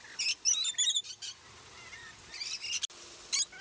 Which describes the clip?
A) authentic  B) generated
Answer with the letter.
A